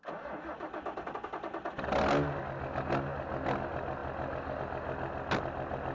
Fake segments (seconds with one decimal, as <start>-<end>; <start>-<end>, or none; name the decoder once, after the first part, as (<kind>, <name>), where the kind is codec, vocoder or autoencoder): none